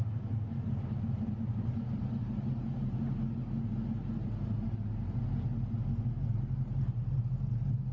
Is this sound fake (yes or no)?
no